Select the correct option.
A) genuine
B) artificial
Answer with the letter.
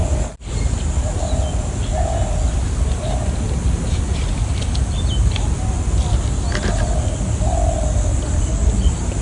A